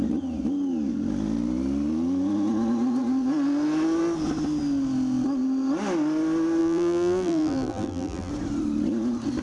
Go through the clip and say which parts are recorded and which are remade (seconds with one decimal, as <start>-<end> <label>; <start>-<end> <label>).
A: 0.0-6.6 recorded; 6.6-8.3 remade; 8.3-9.4 recorded